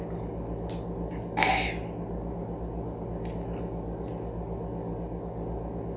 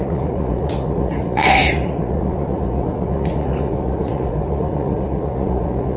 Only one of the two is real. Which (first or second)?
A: first